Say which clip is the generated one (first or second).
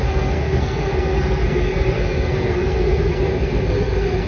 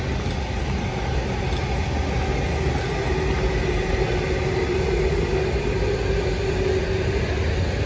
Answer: first